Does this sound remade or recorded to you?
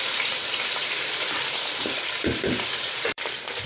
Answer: remade